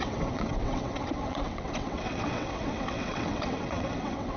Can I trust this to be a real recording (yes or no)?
no